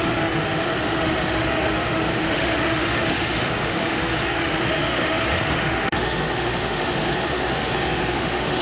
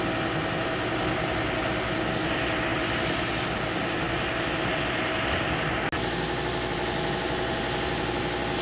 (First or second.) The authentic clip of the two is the second